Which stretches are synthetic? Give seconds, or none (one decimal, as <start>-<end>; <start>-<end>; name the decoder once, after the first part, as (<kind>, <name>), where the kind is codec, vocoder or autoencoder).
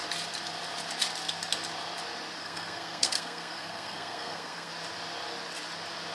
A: 2.4-4.7 (codec, SNAC)